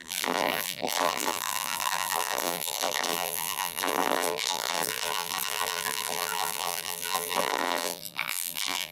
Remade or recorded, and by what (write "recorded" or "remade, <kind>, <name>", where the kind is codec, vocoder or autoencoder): remade, vocoder, BigVGAN v2